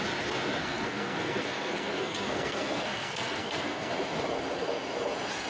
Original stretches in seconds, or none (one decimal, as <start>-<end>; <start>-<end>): 0.0-0.6; 3.9-5.5

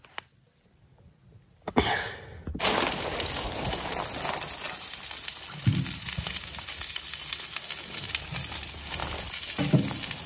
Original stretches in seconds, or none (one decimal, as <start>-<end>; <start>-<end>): 0.0-10.3

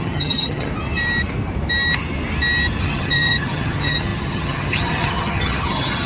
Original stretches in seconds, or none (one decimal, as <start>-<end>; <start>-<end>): 0.7-2.8

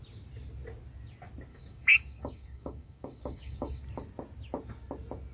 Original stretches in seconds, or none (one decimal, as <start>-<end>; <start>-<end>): 0.0-1.5; 3.8-5.3

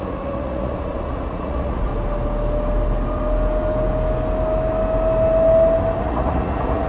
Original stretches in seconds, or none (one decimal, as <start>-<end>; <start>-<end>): 1.9-6.0